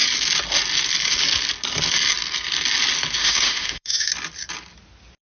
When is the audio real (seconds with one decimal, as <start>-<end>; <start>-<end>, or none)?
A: 0.0-3.2; 4.1-5.3